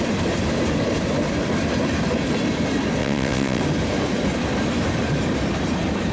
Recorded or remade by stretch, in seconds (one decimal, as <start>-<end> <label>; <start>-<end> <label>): 0.0-3.0 recorded; 3.0-3.6 remade; 3.6-6.1 recorded